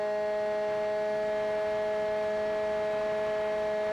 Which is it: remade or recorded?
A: recorded